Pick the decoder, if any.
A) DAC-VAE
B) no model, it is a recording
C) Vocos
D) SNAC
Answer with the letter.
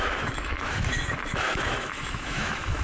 A